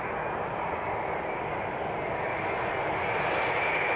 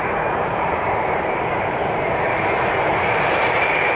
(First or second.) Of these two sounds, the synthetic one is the second